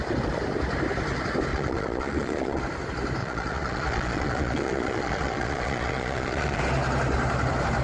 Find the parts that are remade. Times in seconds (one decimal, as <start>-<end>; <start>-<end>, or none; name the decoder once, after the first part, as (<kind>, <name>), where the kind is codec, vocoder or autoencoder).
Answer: 1.5-2.6 (vocoder, Vocos); 3.2-6.6